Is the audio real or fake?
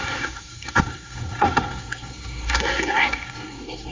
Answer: fake